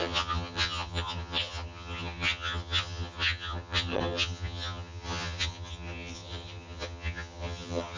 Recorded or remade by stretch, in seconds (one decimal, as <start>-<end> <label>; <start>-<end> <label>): 0.0-8.0 remade